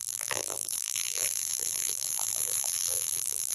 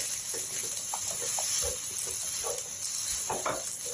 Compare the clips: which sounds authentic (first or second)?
second